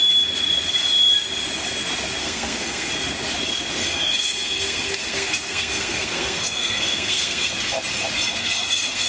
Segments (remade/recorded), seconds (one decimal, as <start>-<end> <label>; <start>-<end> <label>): 0.0-2.2 recorded; 2.2-2.9 remade; 2.9-3.8 recorded; 3.8-7.5 remade; 7.5-8.4 recorded; 8.4-9.1 remade